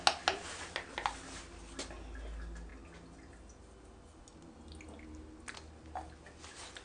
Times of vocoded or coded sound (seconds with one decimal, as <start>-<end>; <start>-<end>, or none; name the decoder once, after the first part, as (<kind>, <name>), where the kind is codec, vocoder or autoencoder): none